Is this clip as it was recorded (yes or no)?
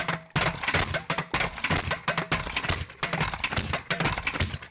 yes